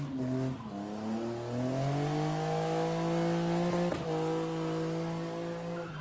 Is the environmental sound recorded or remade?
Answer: recorded